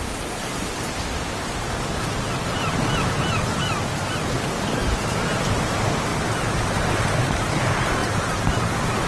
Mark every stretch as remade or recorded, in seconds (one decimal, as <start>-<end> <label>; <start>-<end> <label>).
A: 0.0-9.1 recorded